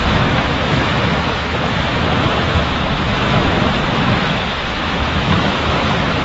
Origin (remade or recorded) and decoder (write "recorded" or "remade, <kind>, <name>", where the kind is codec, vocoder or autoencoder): remade, autoencoder, DAC-VAE